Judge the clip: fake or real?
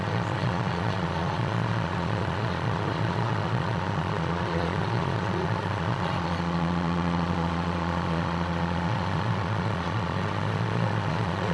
fake